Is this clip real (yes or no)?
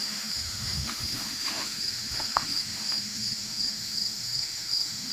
no